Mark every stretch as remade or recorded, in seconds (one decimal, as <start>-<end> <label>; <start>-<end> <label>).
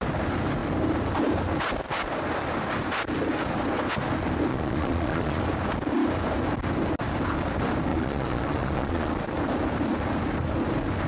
0.0-4.5 recorded; 4.5-5.4 remade; 5.4-7.9 recorded; 7.9-9.1 remade; 9.1-11.1 recorded